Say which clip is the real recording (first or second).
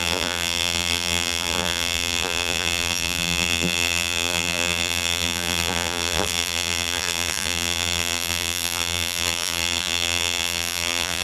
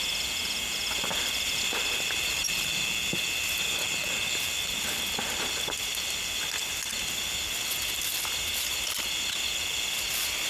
second